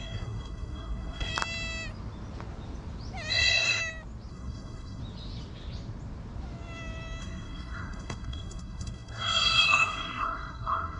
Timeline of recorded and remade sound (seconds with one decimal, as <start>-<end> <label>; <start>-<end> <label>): 0.0-1.3 remade; 1.3-3.3 recorded; 3.3-3.8 remade; 3.8-4.3 recorded; 4.3-5.0 remade; 5.0-7.2 recorded; 7.2-11.0 remade